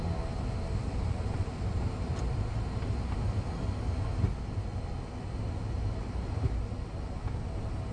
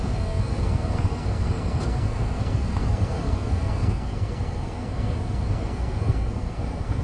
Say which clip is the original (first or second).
first